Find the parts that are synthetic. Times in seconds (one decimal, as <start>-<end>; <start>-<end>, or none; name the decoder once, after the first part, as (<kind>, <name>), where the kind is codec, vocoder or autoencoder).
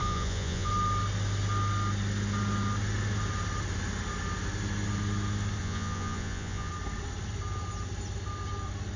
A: 0.0-0.7 (vocoder, Vocos); 5.6-6.7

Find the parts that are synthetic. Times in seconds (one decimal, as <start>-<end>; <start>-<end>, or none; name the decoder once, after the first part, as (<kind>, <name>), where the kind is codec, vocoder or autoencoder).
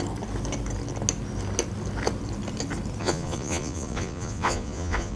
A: 3.0-5.2 (vocoder, Vocos)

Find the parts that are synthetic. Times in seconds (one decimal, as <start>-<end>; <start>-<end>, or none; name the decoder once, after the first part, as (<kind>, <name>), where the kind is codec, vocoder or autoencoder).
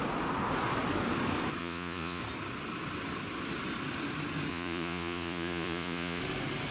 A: 1.6-2.2 (vocoder, Vocos); 4.5-6.2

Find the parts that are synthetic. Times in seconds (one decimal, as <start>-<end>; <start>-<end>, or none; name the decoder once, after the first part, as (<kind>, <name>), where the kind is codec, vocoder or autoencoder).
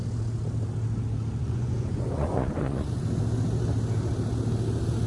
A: 1.4-3.0 (vocoder, Vocos)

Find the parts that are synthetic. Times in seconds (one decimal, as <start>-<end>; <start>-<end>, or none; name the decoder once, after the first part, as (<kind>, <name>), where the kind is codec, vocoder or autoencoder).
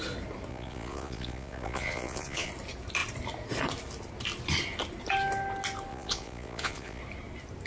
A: 0.5-2.5 (vocoder, Vocos); 5.9-7.0